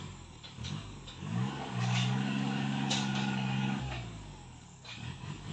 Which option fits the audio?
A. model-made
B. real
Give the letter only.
A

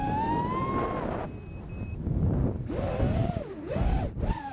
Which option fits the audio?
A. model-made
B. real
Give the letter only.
B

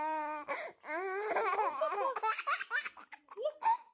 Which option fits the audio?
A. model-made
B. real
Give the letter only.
B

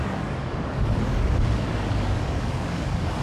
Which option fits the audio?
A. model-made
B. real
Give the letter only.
A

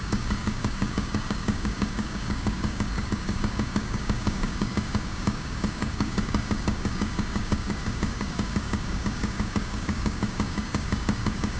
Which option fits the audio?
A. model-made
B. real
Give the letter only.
A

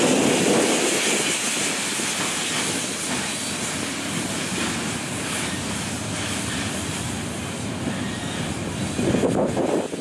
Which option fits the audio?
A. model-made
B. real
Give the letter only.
B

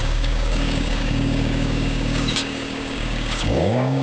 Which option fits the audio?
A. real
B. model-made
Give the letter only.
B